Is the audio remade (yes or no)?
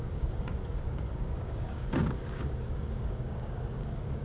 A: yes